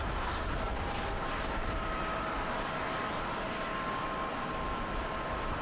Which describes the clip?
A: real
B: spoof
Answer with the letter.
A